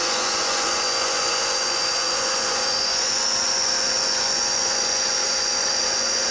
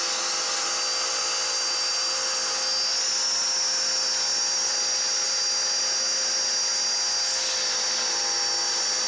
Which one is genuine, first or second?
second